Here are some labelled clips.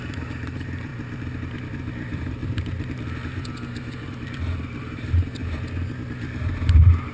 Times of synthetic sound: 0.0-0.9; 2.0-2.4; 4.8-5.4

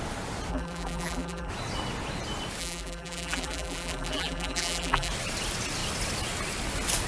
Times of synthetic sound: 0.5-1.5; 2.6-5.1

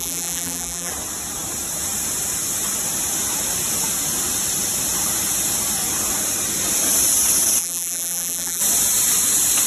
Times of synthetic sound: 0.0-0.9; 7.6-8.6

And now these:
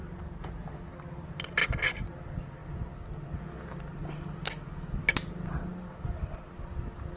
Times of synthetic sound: 0.0-0.7

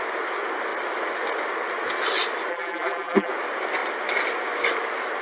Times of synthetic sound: 2.5-3.3

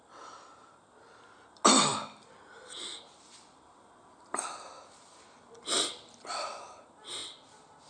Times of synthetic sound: none